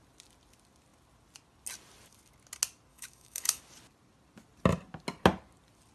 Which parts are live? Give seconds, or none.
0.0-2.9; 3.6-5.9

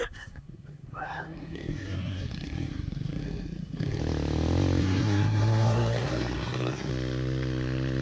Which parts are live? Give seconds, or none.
4.0-4.8; 6.9-8.0

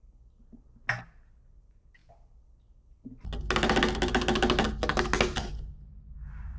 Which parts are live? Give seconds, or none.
0.0-6.6